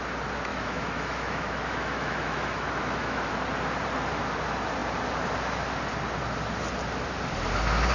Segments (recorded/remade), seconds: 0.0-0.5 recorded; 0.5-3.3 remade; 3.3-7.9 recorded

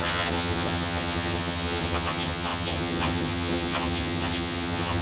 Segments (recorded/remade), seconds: 0.0-5.0 remade

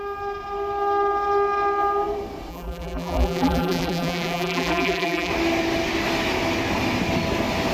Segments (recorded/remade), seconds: 0.0-2.5 recorded; 2.5-5.3 remade; 5.3-7.7 recorded

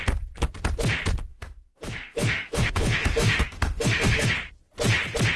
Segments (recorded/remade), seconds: 0.0-1.3 recorded; 1.3-4.3 remade; 4.3-5.4 recorded

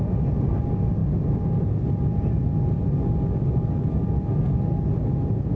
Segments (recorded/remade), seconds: 0.0-5.5 recorded

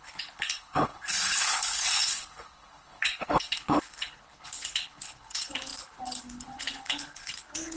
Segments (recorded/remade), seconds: 0.0-7.8 remade

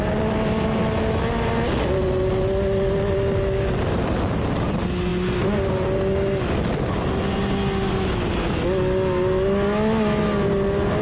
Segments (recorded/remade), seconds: 0.0-11.0 recorded

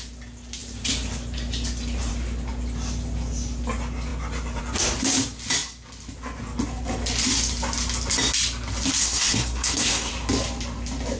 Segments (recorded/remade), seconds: 0.0-9.0 recorded; 9.0-10.1 remade; 10.1-11.2 recorded